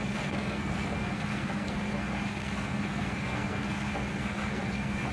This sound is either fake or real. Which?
fake